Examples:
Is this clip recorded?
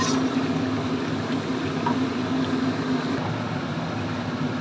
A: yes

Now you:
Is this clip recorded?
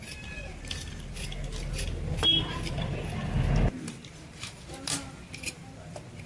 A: yes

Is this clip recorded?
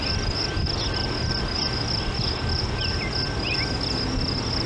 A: yes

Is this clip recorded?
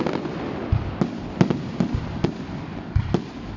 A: yes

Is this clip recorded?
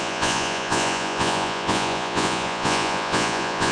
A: no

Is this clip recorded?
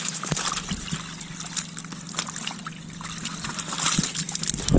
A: yes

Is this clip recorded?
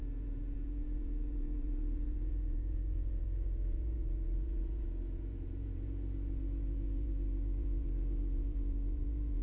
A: no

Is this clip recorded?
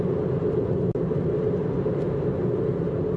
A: yes